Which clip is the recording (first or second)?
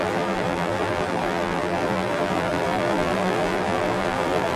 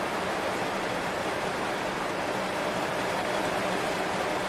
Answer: second